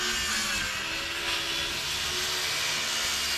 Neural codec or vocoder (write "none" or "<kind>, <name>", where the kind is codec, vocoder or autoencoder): none